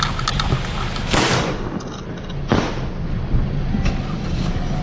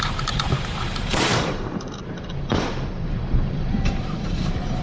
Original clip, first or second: first